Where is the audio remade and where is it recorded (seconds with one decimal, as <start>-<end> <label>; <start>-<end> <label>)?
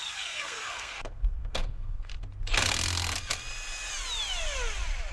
0.0-2.1 remade; 2.1-5.1 recorded